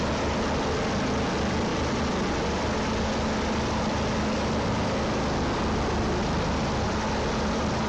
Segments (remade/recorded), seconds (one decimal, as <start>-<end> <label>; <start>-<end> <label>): 0.0-7.9 recorded